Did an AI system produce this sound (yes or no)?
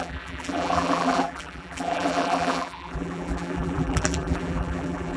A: yes